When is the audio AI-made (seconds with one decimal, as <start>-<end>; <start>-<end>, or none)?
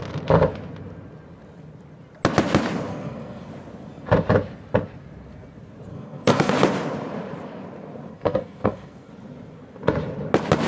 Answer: 2.9-3.5; 5.9-6.5; 8.1-9.1